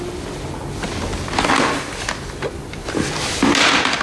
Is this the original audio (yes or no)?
yes